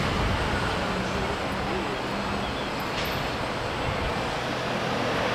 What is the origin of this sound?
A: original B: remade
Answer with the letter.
A